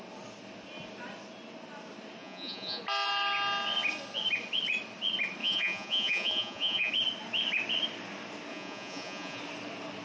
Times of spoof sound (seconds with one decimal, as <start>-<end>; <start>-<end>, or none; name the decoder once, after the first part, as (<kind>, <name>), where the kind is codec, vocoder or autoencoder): 2.2-2.8 (vocoder, Vocos); 5.4-6.9; 8.5-9.4